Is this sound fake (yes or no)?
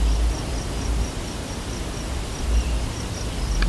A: no